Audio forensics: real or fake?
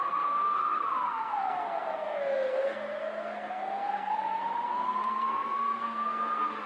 fake